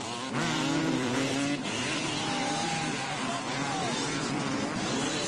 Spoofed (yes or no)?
yes